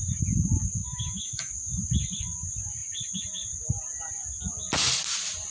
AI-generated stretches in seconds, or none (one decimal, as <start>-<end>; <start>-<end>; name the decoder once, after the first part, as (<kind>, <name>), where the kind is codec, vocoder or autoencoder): 0.8-1.5 (autoencoder, DAC-VAE)